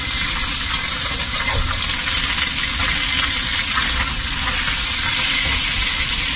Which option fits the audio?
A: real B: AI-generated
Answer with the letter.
A